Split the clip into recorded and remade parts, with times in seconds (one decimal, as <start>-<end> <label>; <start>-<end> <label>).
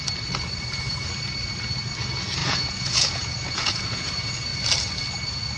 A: 0.0-2.4 recorded; 2.4-4.1 remade; 4.1-5.6 recorded